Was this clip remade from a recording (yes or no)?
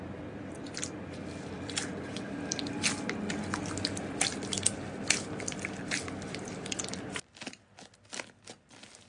no